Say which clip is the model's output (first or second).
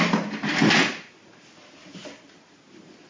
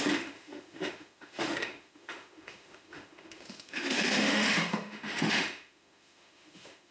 second